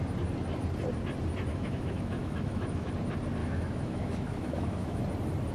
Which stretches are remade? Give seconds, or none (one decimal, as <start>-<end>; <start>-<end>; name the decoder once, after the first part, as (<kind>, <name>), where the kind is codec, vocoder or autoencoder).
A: 1.5-2.9 (autoencoder, DAC-VAE); 3.4-5.0